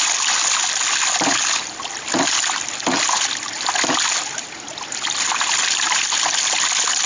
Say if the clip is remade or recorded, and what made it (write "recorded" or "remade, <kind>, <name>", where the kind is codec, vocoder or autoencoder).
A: recorded